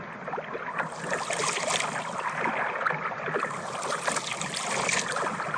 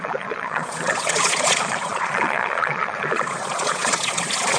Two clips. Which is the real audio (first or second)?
first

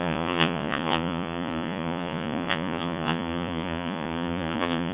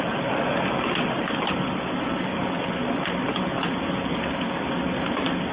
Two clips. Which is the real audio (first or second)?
second